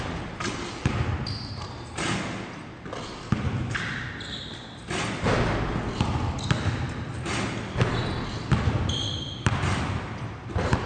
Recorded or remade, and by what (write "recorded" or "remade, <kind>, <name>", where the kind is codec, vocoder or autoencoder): recorded